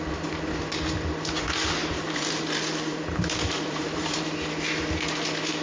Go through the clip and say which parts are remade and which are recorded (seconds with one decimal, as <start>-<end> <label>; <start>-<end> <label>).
0.0-1.8 recorded; 1.8-2.4 remade; 2.4-2.9 recorded; 2.9-4.2 remade; 4.2-5.6 recorded